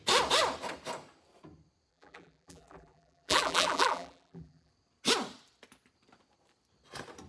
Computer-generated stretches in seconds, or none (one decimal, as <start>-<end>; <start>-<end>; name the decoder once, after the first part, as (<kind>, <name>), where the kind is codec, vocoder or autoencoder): 1.9-4.7 (vocoder, BigVGAN v2)